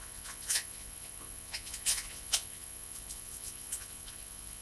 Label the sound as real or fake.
fake